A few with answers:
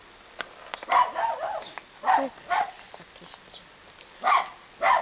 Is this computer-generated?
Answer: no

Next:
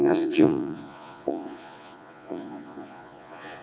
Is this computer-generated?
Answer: yes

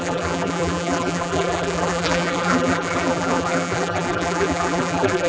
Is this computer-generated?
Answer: yes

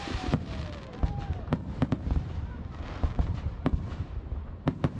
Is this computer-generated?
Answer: yes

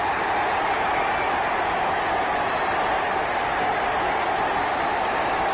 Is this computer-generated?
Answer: no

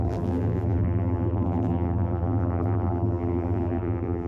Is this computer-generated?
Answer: yes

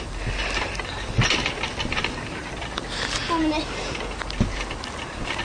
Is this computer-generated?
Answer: no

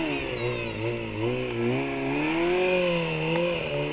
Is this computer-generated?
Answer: no